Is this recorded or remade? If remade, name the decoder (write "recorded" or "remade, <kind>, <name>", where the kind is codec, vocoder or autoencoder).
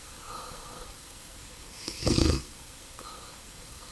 remade, codec, SNAC